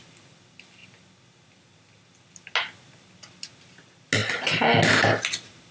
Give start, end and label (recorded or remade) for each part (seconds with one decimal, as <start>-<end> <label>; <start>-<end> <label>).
0.0-5.7 recorded